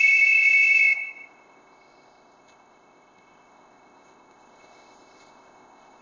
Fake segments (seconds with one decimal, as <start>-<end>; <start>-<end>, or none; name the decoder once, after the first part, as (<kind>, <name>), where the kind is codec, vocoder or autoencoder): 0.0-6.0 (codec, ZipCodec)

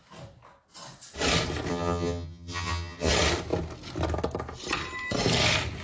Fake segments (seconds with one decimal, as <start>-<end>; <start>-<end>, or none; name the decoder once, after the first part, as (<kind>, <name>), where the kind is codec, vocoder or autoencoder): 1.7-3.1 (vocoder, HiFi-GAN)